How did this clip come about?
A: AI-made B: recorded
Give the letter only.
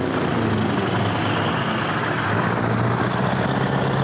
B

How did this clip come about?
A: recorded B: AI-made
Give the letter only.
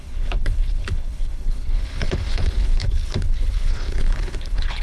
B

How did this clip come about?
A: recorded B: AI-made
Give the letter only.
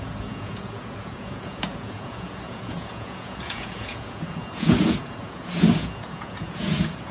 B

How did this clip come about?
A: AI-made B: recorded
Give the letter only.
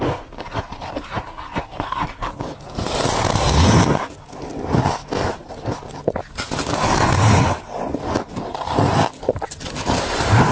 B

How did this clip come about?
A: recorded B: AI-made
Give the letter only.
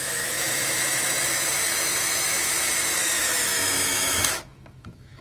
B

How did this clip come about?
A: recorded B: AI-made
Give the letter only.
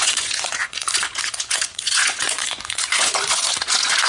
B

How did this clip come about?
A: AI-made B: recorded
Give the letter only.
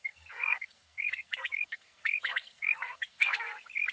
A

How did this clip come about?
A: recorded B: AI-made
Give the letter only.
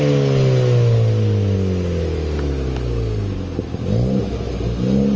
A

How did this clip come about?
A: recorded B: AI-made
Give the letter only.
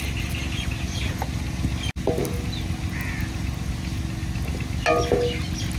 A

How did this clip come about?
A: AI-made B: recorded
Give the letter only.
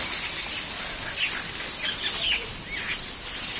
B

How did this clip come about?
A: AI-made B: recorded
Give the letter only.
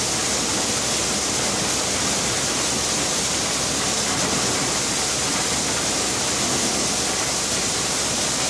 B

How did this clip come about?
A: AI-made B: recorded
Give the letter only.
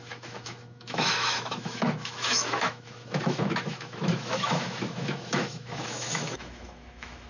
A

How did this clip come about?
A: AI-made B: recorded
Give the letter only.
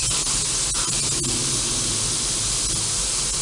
B